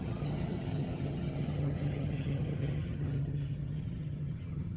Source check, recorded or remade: remade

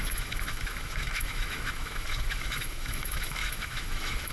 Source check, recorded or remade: remade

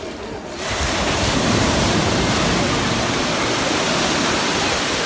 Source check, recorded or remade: recorded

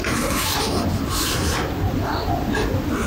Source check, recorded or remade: recorded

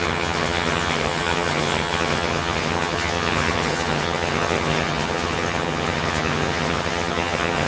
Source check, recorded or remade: remade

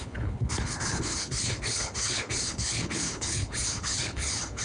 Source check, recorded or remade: remade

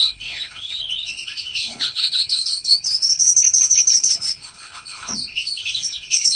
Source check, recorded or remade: remade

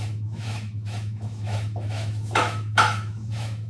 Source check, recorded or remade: remade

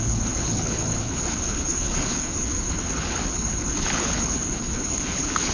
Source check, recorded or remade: remade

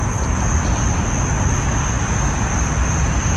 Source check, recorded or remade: recorded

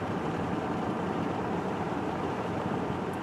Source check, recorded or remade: remade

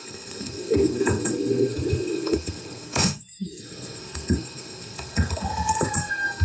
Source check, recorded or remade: remade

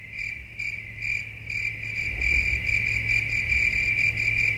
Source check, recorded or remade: recorded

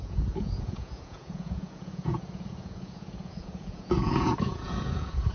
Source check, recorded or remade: remade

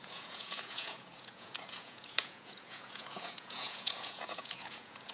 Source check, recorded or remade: remade